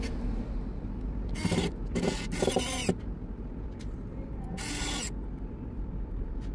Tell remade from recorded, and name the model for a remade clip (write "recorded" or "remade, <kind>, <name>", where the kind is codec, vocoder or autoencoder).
recorded